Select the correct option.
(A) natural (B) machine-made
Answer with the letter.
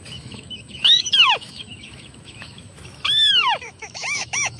B